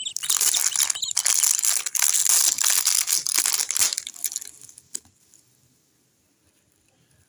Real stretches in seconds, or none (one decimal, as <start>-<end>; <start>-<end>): 0.6-1.7; 2.2-3.1; 3.8-6.2